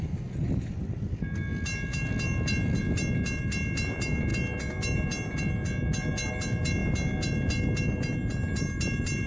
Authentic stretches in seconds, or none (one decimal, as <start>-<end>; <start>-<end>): 0.0-9.3